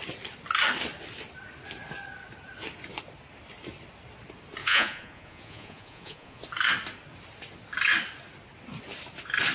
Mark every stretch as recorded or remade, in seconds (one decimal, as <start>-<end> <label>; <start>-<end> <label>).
0.0-4.6 recorded; 4.6-6.4 remade; 6.4-9.5 recorded